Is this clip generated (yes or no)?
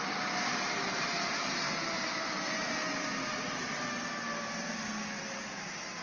no